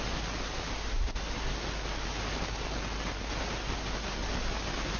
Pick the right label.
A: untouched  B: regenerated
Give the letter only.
A